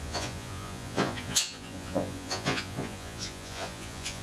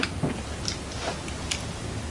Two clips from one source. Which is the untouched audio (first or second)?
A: second